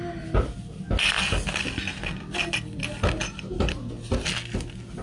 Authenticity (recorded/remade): recorded